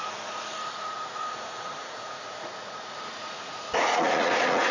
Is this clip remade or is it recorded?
remade